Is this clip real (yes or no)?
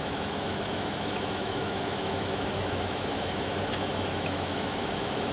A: no